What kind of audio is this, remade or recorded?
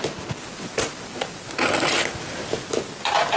recorded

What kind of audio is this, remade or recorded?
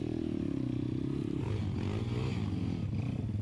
recorded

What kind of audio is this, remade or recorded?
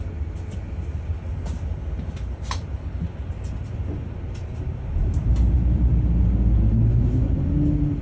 recorded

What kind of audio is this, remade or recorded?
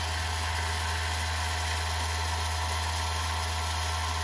recorded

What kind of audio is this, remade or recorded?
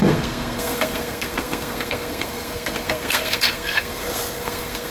remade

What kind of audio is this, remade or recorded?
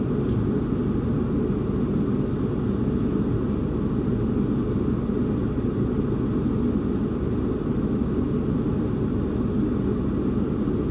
recorded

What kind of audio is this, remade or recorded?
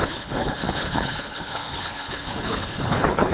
remade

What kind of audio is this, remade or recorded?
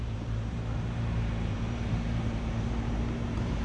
remade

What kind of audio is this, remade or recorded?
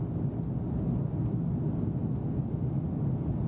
recorded